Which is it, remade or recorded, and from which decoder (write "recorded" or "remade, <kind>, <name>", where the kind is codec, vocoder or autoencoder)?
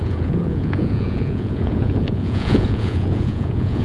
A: remade, vocoder, Vocos